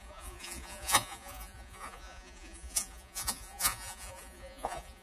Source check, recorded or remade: remade